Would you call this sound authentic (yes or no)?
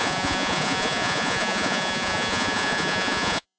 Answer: no